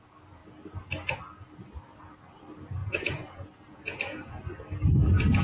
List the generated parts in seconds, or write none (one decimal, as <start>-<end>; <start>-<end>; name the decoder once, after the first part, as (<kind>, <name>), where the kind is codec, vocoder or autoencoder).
2.8-4.3 (vocoder, Vocos)